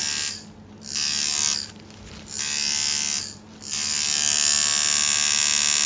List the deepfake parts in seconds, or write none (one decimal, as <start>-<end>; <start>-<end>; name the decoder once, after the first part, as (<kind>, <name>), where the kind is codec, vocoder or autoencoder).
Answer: none